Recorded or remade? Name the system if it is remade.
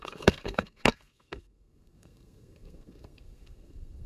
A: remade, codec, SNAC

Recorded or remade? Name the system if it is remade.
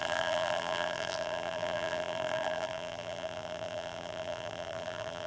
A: remade, vocoder, BigVGAN v2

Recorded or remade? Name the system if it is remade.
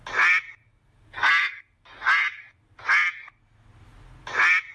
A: recorded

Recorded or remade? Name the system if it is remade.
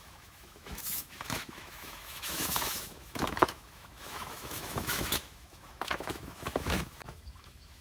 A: remade, autoencoder, DAC-VAE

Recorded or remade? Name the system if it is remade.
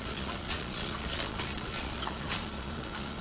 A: remade, vocoder, Vocos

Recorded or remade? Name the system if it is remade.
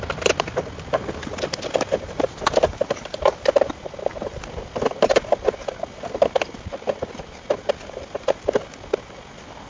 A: recorded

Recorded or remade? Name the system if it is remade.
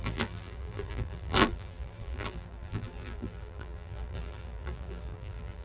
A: remade, vocoder, BigVGAN v2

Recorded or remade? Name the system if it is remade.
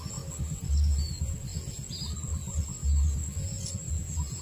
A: recorded